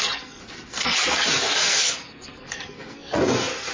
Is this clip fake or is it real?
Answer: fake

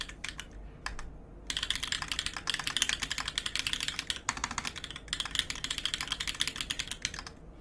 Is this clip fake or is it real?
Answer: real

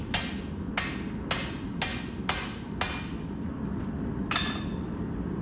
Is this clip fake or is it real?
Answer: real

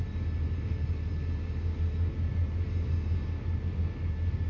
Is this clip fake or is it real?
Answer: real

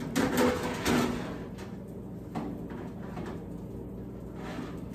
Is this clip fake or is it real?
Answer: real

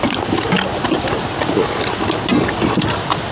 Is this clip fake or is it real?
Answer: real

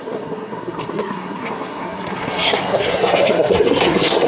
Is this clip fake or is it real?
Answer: fake